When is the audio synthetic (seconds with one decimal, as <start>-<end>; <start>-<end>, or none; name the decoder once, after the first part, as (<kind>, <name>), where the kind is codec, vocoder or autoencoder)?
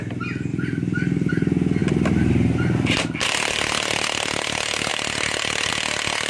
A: 0.5-1.3 (vocoder, BigVGAN v2); 4.9-5.7